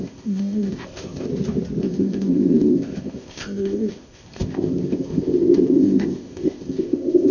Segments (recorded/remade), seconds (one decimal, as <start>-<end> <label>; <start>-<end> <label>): 0.0-1.3 remade; 1.3-1.8 recorded; 1.8-7.3 remade